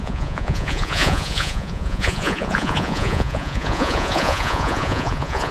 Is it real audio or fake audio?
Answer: fake